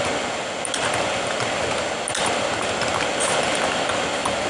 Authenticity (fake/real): real